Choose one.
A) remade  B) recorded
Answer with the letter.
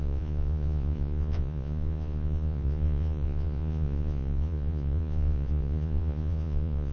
A